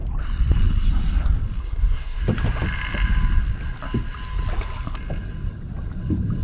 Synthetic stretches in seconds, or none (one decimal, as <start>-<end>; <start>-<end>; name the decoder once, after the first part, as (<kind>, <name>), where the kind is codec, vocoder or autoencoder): 1.6-2.2 (codec, SNAC)